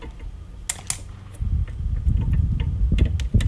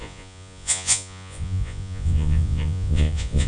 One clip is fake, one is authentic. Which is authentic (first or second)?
first